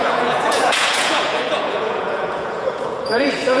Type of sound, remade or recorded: remade